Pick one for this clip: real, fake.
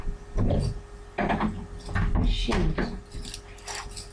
real